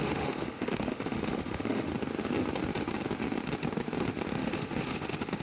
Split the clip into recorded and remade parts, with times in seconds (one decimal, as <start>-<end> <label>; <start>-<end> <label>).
0.0-1.9 remade; 1.9-4.3 recorded; 4.3-5.4 remade